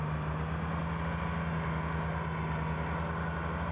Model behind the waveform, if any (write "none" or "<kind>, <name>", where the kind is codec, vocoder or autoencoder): none